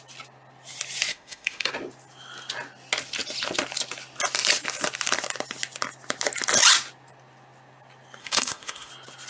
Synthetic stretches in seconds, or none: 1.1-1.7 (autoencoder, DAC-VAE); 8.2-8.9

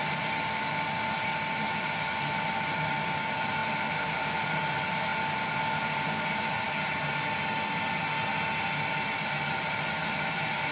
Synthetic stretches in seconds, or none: none

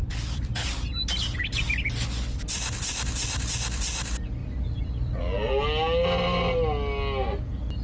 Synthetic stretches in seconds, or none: 0.0-1.4 (vocoder, BigVGAN v2); 4.4-5.2

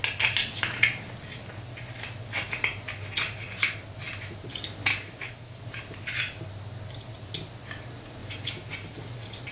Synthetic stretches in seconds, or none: 4.9-5.6 (autoencoder, DAC-VAE)

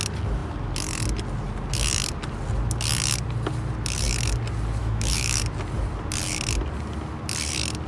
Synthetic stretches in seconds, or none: 4.8-5.4 (autoencoder, DAC-VAE)

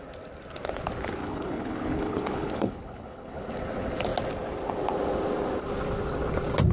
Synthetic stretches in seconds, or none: 1.2-3.5 (codec, HILCodec)

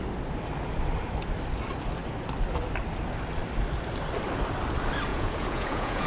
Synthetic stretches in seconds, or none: 5.1-6.1 (vocoder, Vocos)